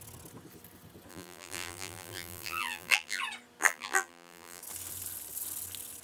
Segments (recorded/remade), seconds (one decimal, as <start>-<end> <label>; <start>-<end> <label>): 0.0-1.1 recorded; 1.1-3.2 remade; 3.2-3.6 recorded; 3.6-4.6 remade; 4.6-6.0 recorded